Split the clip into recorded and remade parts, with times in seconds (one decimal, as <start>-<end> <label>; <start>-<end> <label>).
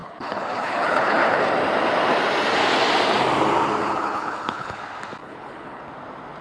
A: 0.0-1.5 remade; 1.5-3.8 recorded; 3.8-4.8 remade; 4.8-5.2 recorded; 5.2-5.8 remade; 5.8-6.4 recorded